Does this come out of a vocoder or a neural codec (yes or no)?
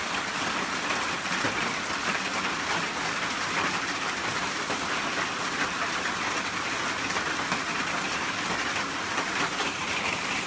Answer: no